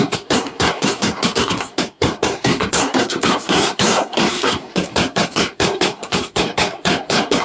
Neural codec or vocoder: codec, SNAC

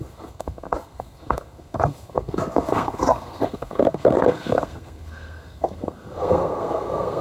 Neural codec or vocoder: codec, SNAC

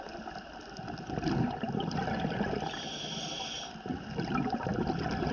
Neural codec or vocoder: none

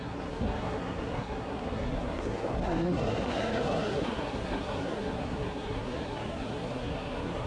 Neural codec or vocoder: codec, SNAC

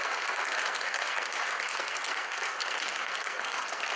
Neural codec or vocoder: codec, SNAC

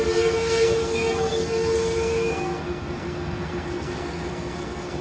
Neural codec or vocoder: codec, SNAC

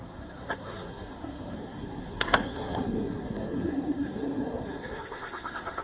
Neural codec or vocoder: codec, SNAC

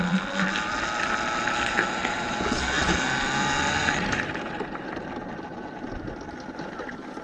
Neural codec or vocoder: none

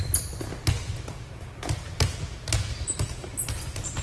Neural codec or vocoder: none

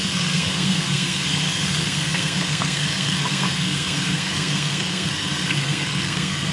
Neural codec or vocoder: codec, SNAC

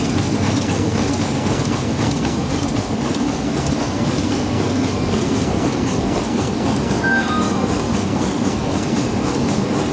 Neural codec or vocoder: codec, SNAC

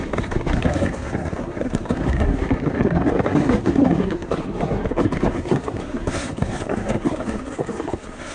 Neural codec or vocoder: codec, SNAC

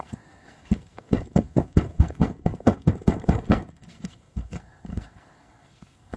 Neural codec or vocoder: codec, SNAC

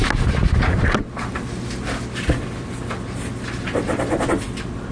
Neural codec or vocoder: none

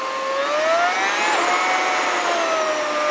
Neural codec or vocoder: none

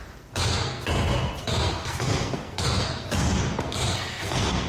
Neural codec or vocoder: codec, SNAC